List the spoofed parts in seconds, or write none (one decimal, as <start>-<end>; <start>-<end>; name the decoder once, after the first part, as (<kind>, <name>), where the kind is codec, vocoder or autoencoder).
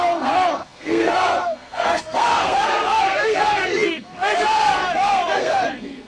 0.0-6.1 (codec, SNAC)